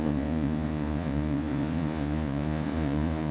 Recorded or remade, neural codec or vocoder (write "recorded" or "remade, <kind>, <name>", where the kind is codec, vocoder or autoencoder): remade, vocoder, Vocos